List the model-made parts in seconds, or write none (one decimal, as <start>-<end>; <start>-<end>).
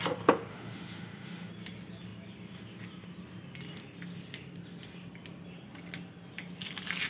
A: 0.5-1.5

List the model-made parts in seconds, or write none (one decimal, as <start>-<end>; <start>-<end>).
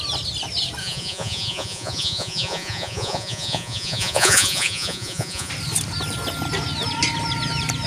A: 0.8-5.5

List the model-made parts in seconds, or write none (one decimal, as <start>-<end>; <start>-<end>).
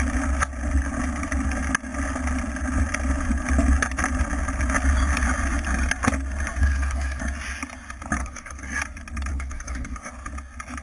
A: 6.6-7.2; 8.2-8.8; 9.3-10.1